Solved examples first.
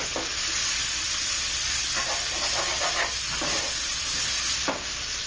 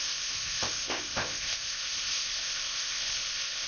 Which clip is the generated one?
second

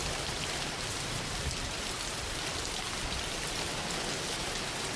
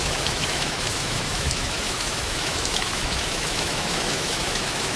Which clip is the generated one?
second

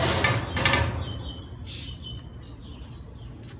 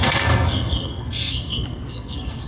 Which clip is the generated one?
second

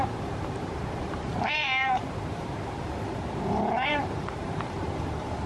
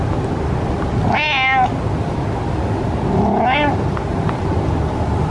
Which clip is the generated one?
first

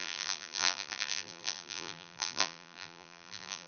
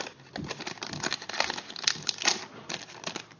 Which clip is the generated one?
first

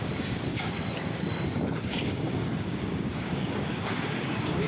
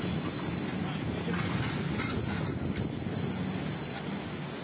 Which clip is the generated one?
first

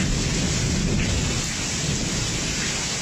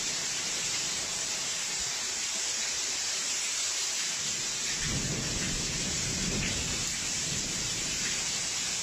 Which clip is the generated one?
second